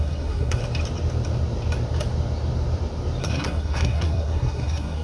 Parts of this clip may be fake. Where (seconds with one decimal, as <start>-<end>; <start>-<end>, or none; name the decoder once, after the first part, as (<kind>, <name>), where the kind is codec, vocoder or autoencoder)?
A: 0.0-0.6 (codec, SNAC); 3.2-5.0